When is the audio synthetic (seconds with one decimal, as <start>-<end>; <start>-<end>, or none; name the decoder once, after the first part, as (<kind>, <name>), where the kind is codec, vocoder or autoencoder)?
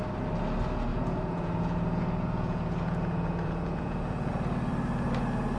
0.9-4.3 (vocoder, Vocos)